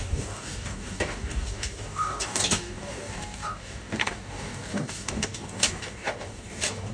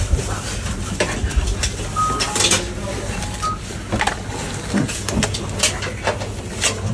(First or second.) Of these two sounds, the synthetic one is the first